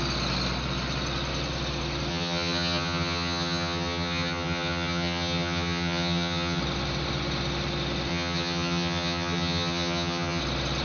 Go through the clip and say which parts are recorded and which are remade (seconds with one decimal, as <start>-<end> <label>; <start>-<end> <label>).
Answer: 0.0-2.1 recorded; 2.1-6.6 remade; 6.6-8.1 recorded; 8.1-10.4 remade; 10.4-10.8 recorded